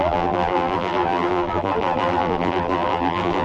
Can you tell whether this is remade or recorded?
remade